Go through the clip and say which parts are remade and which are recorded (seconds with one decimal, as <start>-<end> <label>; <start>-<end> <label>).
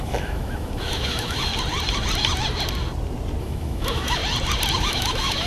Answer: 0.0-1.5 remade; 1.5-3.4 recorded; 3.4-4.2 remade; 4.2-4.8 recorded; 4.8-5.5 remade